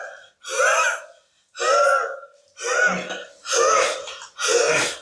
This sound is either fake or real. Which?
real